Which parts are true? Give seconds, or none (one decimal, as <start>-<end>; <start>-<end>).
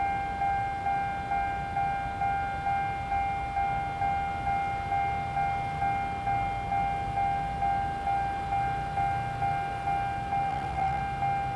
0.0-10.5; 11.0-11.6